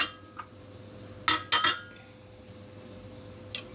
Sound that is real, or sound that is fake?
real